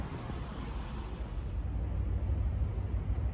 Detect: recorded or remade recorded